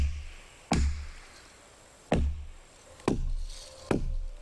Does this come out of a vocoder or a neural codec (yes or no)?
no